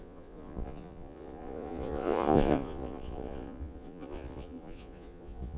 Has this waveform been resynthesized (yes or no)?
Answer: yes